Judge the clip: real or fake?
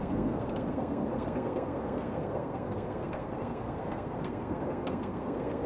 fake